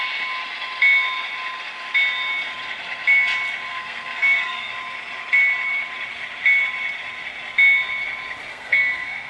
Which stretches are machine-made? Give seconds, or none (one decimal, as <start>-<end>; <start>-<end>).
3.7-4.7; 8.5-9.3